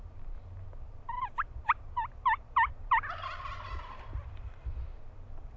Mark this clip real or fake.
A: fake